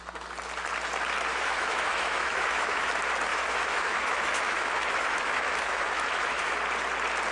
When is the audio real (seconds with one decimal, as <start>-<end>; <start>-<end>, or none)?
0.0-1.3; 2.9-3.3; 6.5-7.3

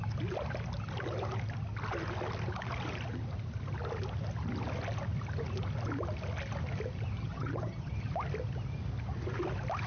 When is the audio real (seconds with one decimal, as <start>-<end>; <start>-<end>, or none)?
0.0-7.2; 7.9-9.9

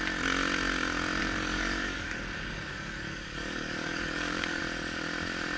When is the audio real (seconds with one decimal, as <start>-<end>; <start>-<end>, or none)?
0.0-1.2; 4.6-5.6